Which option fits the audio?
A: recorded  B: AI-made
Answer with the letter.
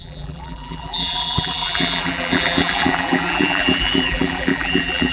B